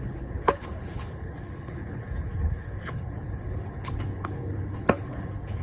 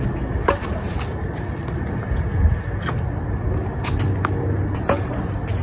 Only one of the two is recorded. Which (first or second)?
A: second